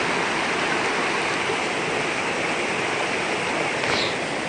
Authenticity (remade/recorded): recorded